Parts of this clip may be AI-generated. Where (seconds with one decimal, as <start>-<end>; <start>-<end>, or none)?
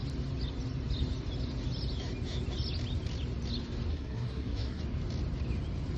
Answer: 3.9-4.8